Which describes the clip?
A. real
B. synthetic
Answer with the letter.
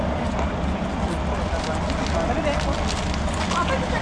A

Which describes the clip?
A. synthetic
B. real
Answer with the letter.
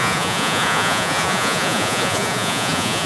A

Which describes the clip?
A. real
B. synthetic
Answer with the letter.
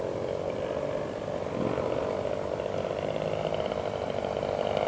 A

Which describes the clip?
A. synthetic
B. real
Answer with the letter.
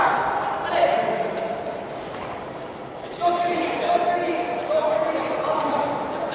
B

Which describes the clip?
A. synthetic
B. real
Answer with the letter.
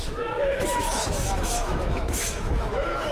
A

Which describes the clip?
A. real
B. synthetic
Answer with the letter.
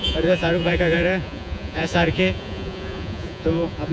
B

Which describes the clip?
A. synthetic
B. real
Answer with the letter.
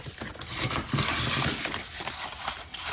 B